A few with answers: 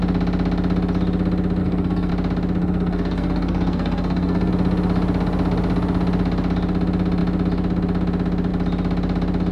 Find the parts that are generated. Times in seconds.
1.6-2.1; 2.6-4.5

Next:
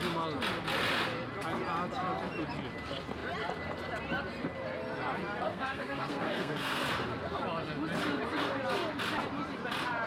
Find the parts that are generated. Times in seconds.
5.5-6.8

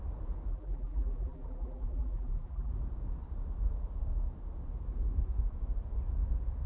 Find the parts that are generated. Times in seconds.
0.5-2.7

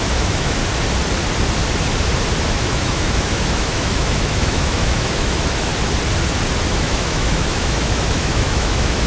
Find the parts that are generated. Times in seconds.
0.0-0.6; 2.4-5.7; 6.7-9.1

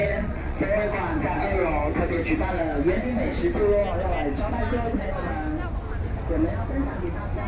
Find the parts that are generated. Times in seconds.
0.0-0.6

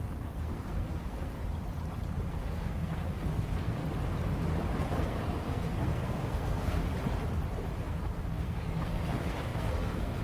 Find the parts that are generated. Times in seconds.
0.0-1.4; 2.3-3.8; 4.8-6.8; 7.8-10.2